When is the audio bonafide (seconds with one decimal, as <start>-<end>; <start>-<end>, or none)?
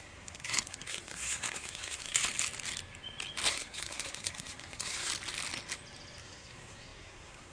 2.2-3.5; 5.1-6.2